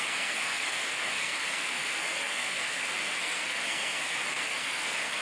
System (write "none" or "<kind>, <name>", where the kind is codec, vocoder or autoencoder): codec, SNAC